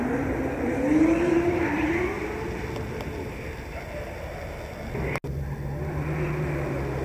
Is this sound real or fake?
real